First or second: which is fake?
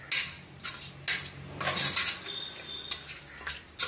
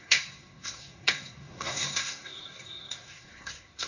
second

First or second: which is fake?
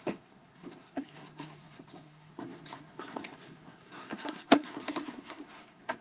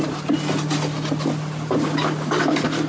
first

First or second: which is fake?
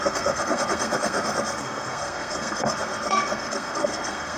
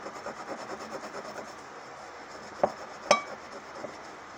first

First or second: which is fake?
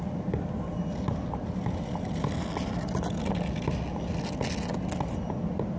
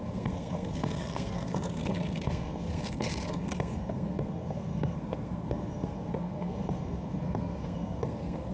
second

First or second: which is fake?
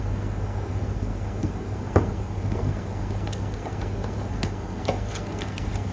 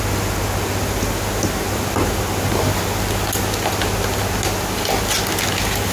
first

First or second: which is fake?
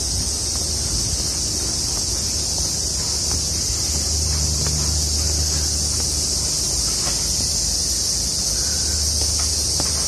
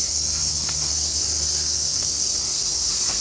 second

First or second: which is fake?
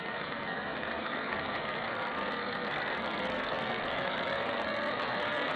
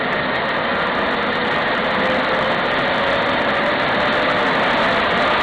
first